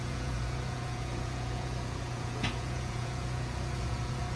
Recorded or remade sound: remade